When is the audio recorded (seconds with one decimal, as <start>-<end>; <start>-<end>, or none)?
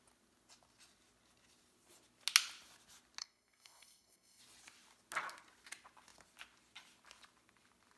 0.0-3.2; 4.4-8.0